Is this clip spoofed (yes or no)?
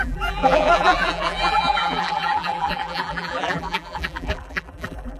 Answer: yes